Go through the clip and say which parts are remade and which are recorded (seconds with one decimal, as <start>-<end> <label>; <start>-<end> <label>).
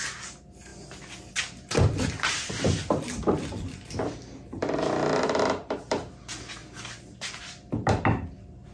0.0-4.6 recorded; 4.6-5.4 remade; 5.4-8.7 recorded